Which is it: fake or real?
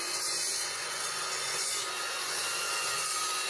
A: fake